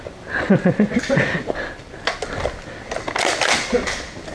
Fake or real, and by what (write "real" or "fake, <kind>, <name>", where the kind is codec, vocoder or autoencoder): real